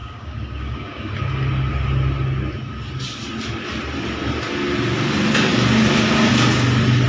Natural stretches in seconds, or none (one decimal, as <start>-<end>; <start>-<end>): 1.1-7.1